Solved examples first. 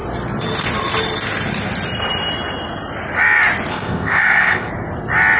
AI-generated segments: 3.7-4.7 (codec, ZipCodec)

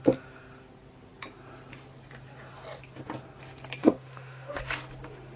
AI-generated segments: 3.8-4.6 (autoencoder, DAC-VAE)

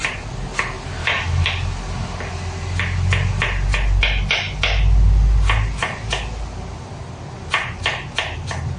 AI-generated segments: 1.0-1.5 (autoencoder, DAC-VAE)